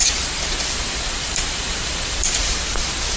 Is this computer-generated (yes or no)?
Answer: yes